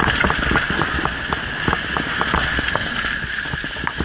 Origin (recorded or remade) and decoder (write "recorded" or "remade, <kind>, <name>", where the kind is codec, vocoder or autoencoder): recorded